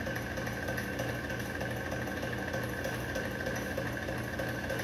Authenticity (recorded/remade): recorded